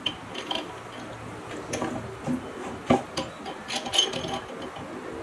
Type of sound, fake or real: real